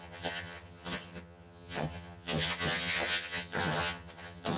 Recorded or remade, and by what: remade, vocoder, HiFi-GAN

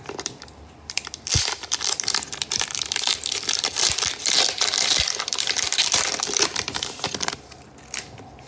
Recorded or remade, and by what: recorded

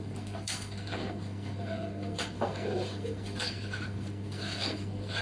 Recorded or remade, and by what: remade, codec, SNAC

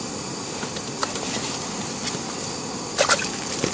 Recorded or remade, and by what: recorded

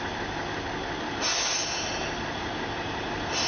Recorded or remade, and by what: recorded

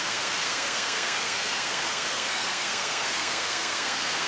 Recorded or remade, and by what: remade, codec, SNAC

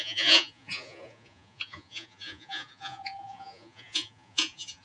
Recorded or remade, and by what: remade, vocoder, Vocos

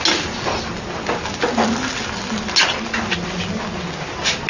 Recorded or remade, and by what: recorded